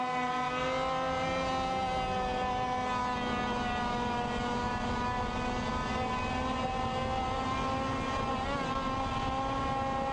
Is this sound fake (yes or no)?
no